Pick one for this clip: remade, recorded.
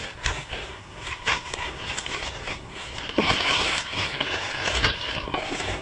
remade